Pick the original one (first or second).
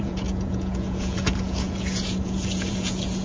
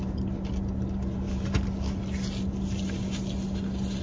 second